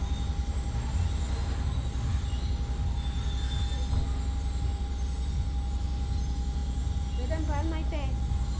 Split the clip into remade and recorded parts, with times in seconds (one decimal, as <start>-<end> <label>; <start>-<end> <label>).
0.0-8.6 recorded

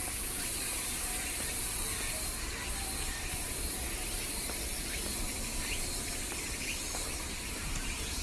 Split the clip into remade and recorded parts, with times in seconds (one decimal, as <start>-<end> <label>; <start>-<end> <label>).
0.0-0.5 remade; 0.5-3.4 recorded; 3.4-3.8 remade; 3.8-7.6 recorded; 7.6-8.2 remade